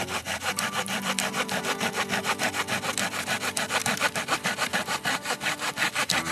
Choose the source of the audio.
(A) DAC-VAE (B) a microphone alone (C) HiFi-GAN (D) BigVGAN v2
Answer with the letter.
D